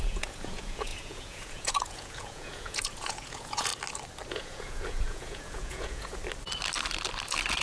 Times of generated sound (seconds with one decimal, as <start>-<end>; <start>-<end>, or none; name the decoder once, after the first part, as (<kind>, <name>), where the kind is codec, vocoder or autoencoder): 0.0-3.7 (vocoder, Vocos); 4.3-6.2